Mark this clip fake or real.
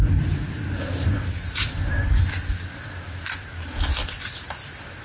real